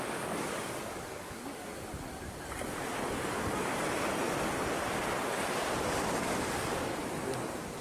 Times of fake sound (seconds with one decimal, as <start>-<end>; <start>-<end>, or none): 0.0-1.7; 6.2-6.9